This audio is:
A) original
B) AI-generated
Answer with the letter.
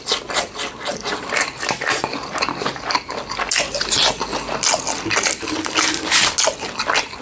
A